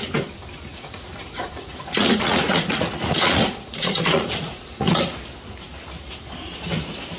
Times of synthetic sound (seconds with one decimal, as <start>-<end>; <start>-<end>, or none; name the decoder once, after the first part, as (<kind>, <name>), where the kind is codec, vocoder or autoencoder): 0.7-5.0 (vocoder, Vocos)